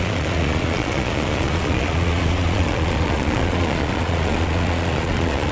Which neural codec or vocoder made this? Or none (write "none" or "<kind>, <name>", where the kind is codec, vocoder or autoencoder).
vocoder, Vocos